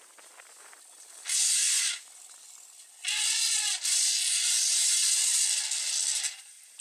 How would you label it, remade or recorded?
recorded